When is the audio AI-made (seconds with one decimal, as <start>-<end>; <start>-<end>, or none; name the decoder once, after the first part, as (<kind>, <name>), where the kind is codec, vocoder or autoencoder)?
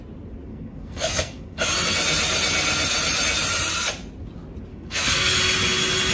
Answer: 0.5-1.7 (codec, SNAC); 4.7-5.4